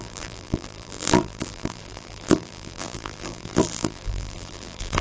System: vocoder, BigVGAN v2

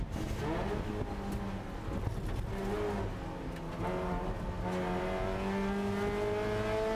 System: none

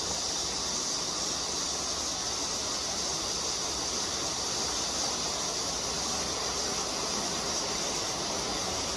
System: none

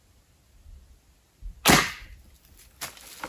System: none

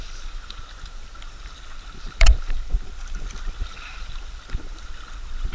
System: vocoder, BigVGAN v2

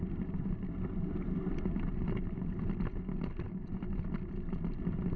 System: none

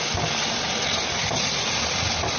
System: none